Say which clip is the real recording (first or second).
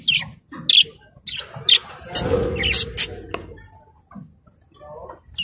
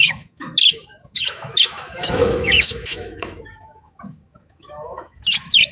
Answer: first